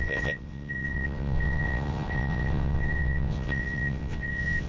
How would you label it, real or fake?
fake